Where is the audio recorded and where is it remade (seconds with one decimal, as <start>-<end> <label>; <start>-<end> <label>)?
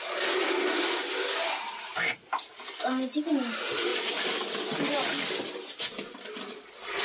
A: 0.0-3.9 recorded; 3.9-7.0 remade